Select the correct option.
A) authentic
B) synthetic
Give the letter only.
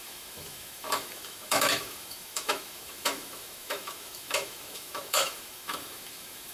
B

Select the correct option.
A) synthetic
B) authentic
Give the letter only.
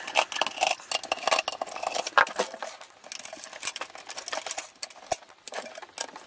B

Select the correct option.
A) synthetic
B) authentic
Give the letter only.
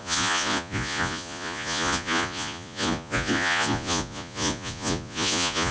A